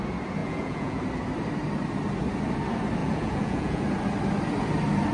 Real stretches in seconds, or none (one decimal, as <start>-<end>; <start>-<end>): 0.0-0.4; 1.0-3.0; 3.8-5.1